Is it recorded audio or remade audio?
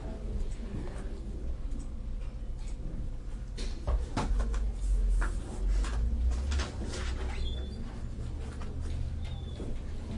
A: recorded